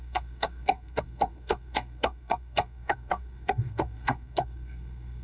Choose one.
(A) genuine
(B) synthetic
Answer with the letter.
B